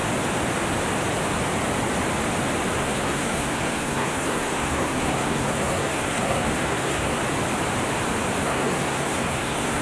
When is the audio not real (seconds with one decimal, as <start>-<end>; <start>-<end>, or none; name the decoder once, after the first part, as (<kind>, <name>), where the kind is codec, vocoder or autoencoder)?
2.8-7.2 (codec, SNAC); 8.4-9.8